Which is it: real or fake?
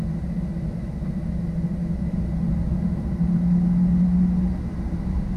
real